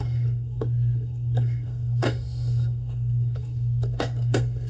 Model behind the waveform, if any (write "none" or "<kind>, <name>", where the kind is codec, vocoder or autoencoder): codec, SNAC